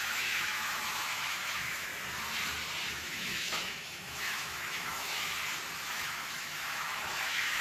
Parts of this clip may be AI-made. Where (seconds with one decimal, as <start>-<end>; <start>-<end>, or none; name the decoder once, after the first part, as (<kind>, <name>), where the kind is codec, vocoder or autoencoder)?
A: 0.0-1.9 (autoencoder, DAC-VAE); 2.9-5.3; 5.9-7.6